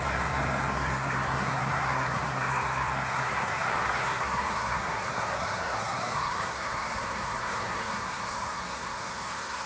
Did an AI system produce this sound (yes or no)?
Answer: yes